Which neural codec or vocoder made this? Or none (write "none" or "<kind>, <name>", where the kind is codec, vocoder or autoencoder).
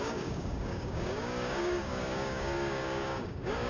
codec, DAC